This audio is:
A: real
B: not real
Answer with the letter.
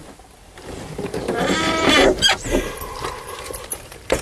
B